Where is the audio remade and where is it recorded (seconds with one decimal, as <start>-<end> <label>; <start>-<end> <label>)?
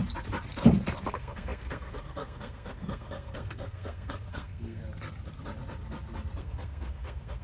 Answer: 0.0-1.1 recorded; 1.1-4.8 remade; 4.8-6.4 recorded; 6.4-7.4 remade